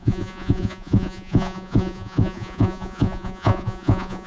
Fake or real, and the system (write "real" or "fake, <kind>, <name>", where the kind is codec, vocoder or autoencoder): fake, vocoder, Vocos